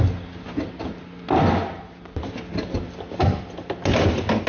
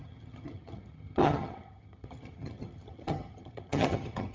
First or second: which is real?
first